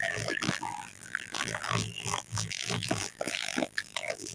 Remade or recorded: remade